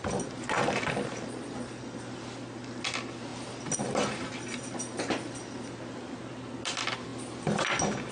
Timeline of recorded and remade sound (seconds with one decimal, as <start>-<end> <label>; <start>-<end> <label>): 0.0-8.1 recorded